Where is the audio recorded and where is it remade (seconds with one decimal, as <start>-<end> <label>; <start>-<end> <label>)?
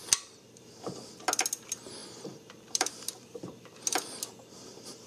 0.0-1.1 remade; 1.1-2.0 recorded; 2.0-5.1 remade